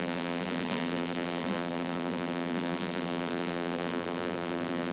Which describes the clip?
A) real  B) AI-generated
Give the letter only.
B